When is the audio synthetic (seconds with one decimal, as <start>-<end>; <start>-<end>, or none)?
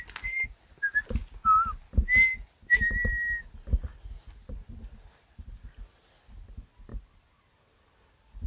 none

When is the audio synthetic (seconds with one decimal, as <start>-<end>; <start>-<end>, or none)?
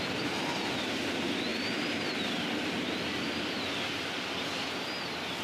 none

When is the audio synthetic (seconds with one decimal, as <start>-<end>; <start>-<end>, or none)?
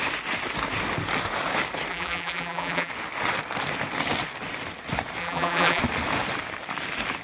1.9-2.9; 5.2-5.8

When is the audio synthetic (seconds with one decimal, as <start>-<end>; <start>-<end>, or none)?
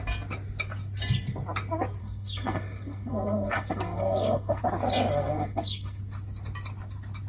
2.0-4.6; 5.1-6.0